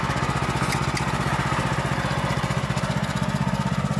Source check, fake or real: real